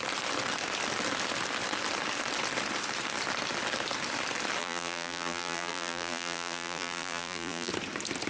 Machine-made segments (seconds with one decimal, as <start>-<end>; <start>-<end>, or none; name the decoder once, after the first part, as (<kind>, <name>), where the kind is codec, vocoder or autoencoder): 4.6-7.7 (vocoder, BigVGAN v2)